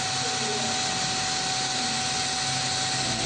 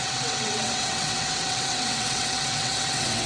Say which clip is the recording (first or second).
first